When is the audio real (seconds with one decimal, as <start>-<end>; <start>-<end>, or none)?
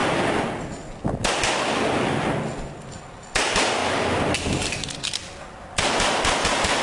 0.0-6.8